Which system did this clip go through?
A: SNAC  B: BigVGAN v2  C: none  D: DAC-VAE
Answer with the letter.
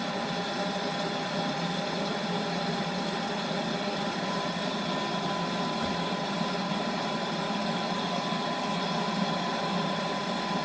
C